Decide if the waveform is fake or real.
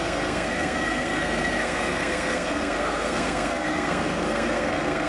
fake